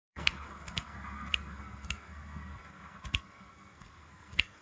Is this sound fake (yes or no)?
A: yes